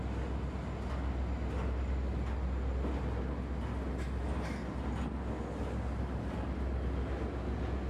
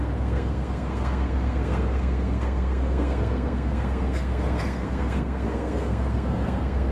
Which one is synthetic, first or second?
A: second